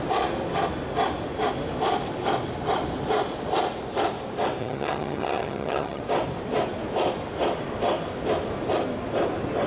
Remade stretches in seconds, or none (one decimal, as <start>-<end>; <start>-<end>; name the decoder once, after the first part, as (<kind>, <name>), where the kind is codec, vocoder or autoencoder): 4.6-6.0 (vocoder, HiFi-GAN)